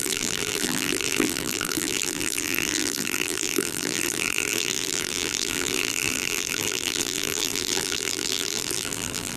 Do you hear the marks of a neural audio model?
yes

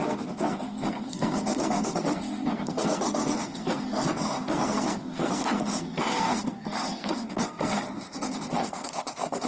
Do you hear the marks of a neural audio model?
yes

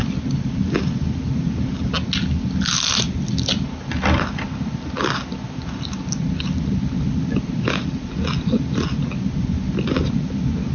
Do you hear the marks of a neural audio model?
no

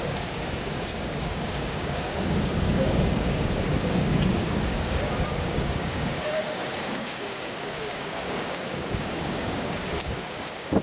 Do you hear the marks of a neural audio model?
yes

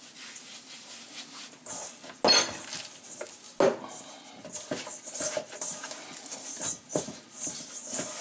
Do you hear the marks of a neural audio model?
no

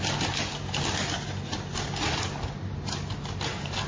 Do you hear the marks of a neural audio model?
no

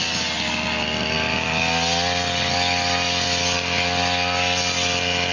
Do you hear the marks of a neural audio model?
no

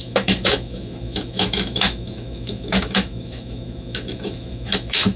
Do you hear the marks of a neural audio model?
yes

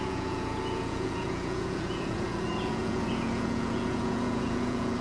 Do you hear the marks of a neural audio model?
yes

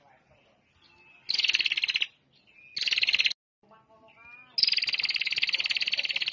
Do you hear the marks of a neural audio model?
no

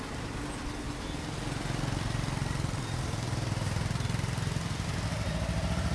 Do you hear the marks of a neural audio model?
no